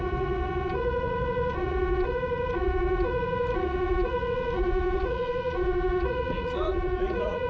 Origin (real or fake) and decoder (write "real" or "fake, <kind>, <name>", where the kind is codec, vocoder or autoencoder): fake, vocoder, Vocos